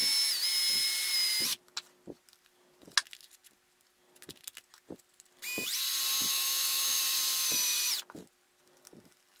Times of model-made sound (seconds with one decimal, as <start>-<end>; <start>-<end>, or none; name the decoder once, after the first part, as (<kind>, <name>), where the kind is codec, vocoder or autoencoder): 6.3-7.0 (autoencoder, DAC-VAE)